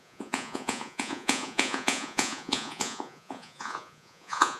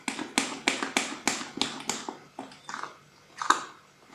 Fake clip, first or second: first